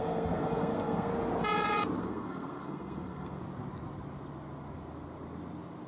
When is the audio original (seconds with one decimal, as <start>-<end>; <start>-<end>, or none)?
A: 1.1-2.0; 3.4-5.9